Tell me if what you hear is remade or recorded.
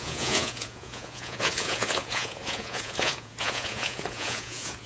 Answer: remade